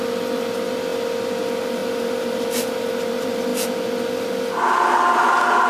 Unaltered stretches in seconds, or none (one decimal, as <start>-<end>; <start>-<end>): 0.0-5.7